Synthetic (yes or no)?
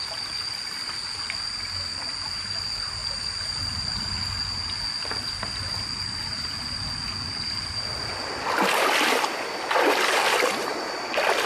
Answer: no